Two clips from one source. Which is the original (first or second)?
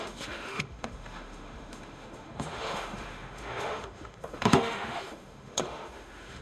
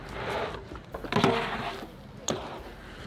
second